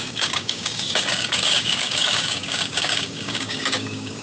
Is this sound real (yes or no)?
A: no